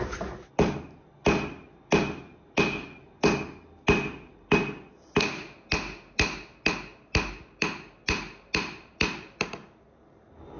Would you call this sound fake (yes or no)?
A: no